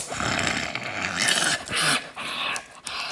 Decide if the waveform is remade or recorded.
recorded